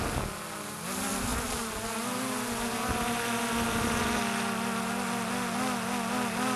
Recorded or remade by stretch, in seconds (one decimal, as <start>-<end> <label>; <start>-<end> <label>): 0.0-6.6 recorded